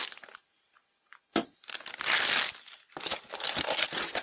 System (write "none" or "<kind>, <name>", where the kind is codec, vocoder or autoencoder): none